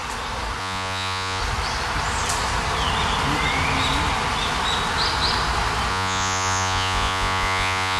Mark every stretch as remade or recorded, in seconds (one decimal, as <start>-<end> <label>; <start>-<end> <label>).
0.0-0.6 recorded; 0.6-1.4 remade; 1.4-5.9 recorded; 5.9-8.0 remade